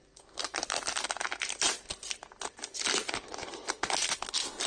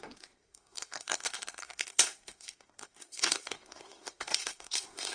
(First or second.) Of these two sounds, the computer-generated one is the second